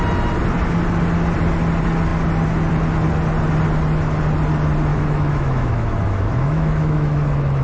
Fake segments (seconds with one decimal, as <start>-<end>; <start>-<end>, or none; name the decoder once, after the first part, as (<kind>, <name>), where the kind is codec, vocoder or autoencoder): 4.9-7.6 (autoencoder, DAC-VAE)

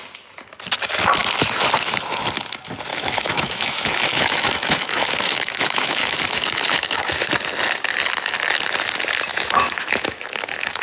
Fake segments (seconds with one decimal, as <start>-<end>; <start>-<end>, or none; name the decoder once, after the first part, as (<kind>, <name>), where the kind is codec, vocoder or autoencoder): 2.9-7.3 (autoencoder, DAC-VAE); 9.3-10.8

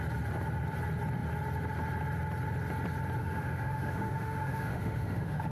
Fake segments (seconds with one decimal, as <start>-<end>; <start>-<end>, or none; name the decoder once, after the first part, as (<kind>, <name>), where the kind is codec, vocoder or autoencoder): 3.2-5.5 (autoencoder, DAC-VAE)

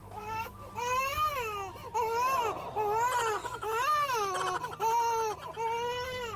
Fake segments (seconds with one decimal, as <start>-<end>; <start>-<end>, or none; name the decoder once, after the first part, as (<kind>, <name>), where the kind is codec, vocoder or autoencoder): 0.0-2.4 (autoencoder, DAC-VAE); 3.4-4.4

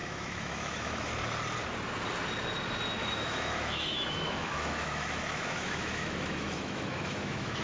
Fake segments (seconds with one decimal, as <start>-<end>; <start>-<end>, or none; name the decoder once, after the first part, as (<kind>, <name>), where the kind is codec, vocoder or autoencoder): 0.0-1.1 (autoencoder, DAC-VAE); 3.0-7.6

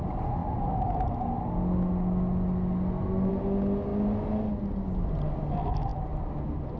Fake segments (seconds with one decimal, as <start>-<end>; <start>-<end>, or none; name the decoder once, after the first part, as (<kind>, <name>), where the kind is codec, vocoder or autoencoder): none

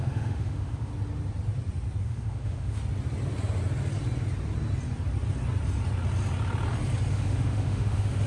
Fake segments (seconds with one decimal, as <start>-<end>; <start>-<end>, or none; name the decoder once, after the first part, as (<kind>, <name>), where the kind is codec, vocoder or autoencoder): 0.0-0.9 (autoencoder, DAC-VAE); 2.0-2.8; 7.1-8.3

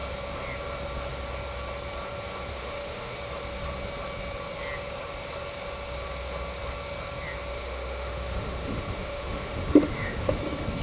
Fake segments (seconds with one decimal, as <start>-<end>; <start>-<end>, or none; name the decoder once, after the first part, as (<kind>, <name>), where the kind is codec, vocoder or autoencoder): 2.5-3.2 (autoencoder, DAC-VAE); 7.5-10.4